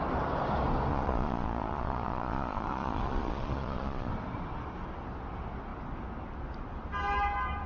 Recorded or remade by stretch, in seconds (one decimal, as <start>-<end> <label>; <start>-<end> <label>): 0.0-0.9 recorded; 0.9-4.1 remade; 4.1-7.7 recorded